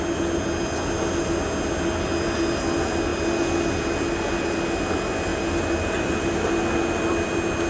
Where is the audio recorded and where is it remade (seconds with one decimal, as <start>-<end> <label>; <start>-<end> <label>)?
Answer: 0.0-5.3 recorded; 5.3-6.5 remade; 6.5-7.7 recorded